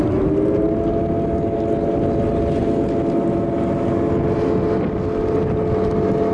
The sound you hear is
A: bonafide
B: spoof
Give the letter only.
A